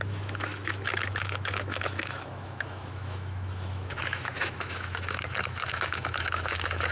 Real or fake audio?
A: fake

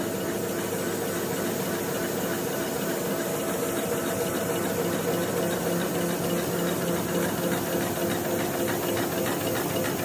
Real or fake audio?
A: real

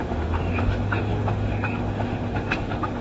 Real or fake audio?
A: fake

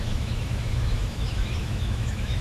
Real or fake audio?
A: fake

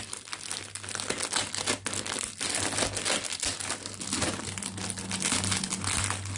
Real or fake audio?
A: real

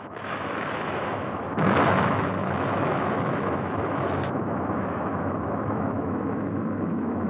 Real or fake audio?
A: fake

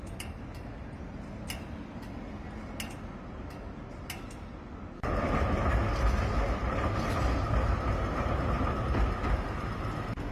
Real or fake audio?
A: real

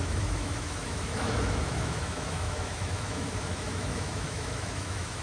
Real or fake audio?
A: fake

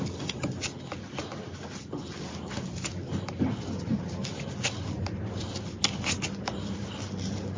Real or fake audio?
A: real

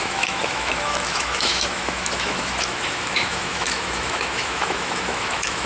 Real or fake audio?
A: fake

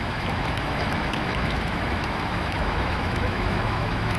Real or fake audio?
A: fake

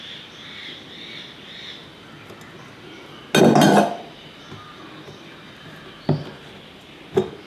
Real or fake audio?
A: real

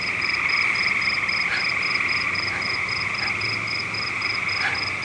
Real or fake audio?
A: real